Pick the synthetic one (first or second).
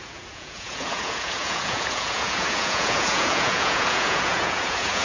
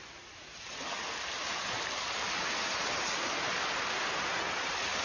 first